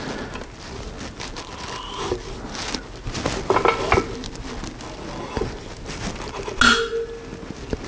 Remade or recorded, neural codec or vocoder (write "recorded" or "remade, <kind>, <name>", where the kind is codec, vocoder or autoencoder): recorded